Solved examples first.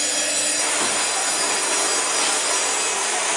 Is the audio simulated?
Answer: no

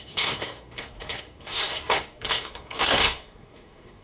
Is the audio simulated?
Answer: yes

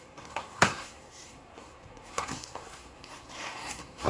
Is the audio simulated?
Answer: yes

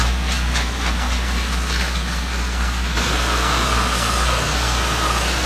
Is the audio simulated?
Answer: yes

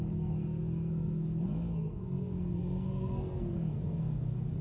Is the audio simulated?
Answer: yes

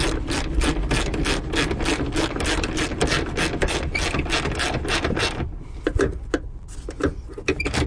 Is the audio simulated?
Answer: no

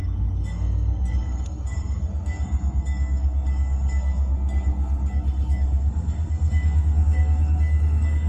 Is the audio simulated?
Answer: yes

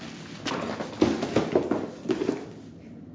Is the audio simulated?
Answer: no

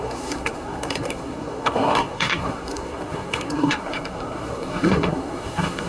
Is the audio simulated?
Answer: yes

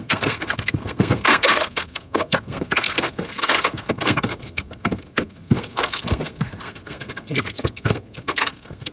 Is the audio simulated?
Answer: yes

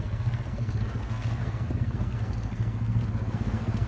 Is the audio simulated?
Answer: yes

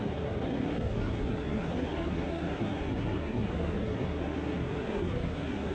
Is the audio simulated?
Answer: yes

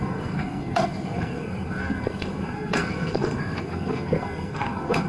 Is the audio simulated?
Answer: yes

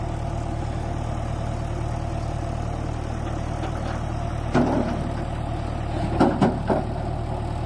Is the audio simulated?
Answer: no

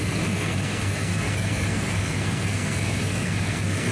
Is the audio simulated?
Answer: yes